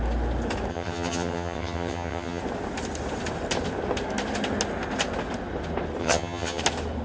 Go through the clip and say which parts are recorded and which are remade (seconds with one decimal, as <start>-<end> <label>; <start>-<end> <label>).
0.0-0.7 recorded; 0.7-2.4 remade; 2.4-6.0 recorded; 6.0-6.6 remade; 6.6-7.0 recorded